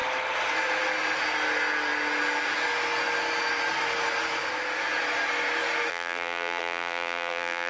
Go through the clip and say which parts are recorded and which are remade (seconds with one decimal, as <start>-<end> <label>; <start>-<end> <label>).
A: 0.0-5.9 recorded; 5.9-7.7 remade